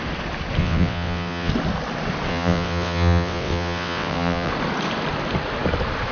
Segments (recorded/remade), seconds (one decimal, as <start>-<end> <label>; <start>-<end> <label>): 0.0-0.6 recorded; 0.6-1.5 remade; 1.5-2.3 recorded; 2.3-4.5 remade; 4.5-6.1 recorded